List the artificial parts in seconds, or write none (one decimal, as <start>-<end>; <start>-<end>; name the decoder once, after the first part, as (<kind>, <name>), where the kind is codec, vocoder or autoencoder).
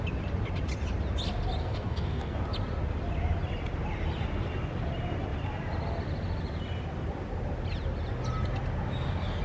1.6-2.4 (codec, SNAC)